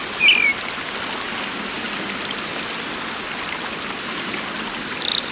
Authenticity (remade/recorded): recorded